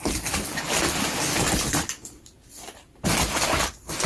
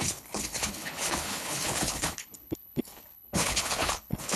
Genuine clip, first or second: first